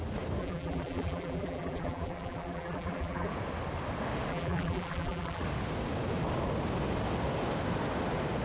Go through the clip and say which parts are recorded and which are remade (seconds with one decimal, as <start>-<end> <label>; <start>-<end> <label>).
0.0-0.4 recorded; 0.4-3.3 remade; 3.3-4.3 recorded; 4.3-5.4 remade; 5.4-8.4 recorded